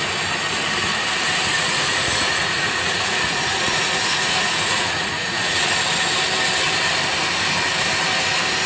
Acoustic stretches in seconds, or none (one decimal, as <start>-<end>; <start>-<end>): 0.0-1.5; 5.7-8.7